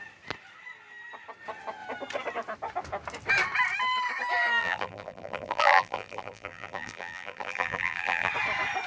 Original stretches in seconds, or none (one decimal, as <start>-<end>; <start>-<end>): 0.0-4.6; 8.3-8.9